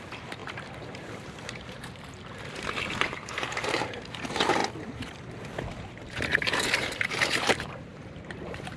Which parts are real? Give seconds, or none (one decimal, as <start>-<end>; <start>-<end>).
4.6-5.7